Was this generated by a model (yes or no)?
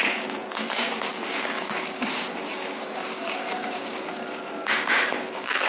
yes